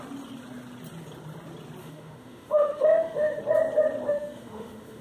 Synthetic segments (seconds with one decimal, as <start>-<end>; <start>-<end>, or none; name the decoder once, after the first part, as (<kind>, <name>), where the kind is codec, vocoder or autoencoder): 1.8-3.4 (autoencoder, DAC-VAE); 4.1-5.0